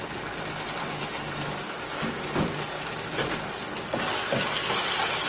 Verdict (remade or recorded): recorded